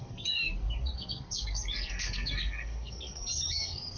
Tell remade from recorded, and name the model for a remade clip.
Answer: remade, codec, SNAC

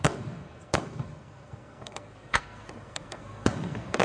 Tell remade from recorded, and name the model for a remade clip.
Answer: remade, codec, SNAC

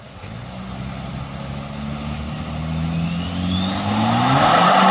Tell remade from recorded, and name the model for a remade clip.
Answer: recorded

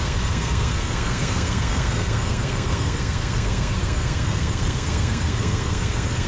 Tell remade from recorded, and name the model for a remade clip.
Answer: remade, codec, SNAC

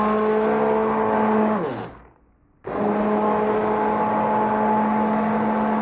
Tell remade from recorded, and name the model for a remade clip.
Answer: recorded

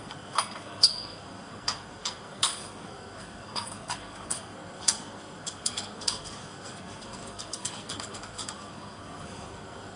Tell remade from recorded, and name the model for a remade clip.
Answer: remade, codec, SNAC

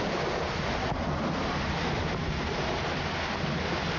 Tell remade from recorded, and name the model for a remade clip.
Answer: recorded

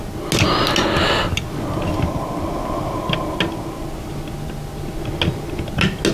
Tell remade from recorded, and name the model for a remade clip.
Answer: recorded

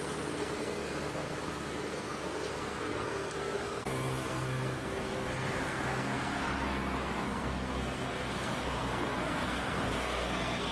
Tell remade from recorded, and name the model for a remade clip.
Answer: remade, codec, SNAC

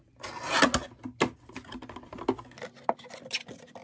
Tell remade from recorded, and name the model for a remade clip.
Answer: recorded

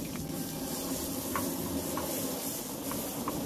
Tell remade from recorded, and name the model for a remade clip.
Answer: recorded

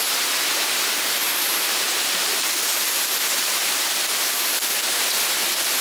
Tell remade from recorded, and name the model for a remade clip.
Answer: recorded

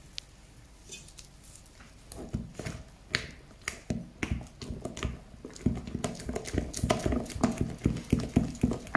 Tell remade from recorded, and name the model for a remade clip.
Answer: recorded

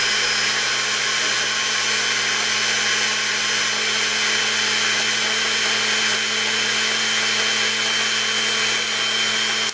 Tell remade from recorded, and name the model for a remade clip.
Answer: recorded